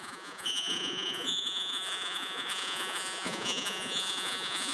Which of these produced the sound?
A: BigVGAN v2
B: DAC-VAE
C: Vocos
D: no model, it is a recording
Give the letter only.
C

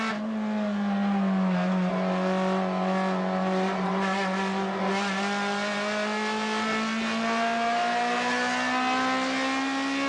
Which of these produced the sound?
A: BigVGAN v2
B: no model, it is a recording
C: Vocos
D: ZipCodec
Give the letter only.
B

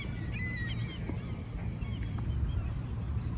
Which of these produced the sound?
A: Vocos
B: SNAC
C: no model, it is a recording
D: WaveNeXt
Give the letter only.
C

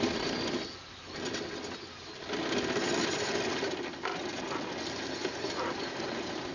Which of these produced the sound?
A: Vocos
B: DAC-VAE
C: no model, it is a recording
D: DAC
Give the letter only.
C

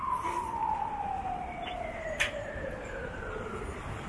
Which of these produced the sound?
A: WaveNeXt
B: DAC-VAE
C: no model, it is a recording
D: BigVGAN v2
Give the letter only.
D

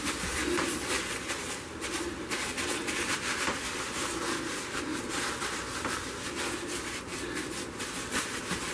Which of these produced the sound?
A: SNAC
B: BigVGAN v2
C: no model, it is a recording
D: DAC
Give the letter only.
B